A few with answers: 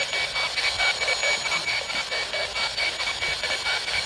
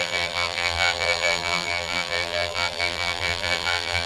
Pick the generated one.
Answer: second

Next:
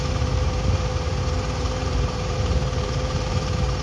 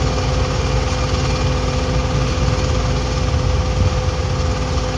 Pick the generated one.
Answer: first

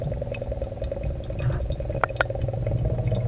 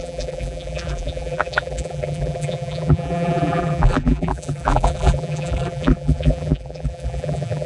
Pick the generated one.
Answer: second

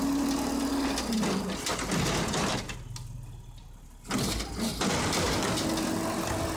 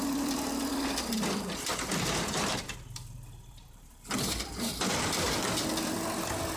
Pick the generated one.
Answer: second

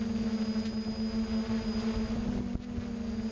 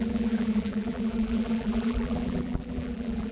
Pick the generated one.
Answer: second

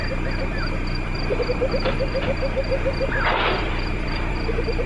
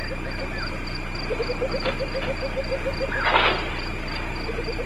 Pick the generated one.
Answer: first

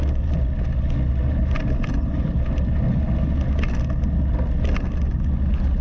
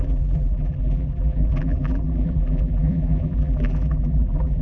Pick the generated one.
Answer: second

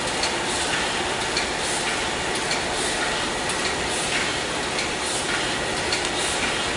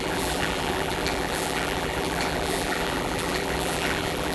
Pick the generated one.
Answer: second